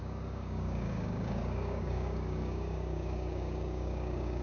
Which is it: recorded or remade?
remade